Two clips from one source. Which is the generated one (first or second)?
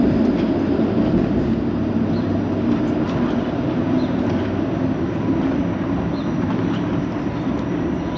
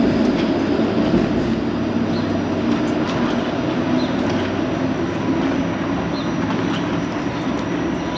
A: first